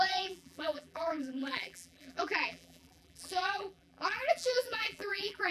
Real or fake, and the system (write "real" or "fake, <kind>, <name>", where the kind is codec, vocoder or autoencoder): fake, vocoder, BigVGAN v2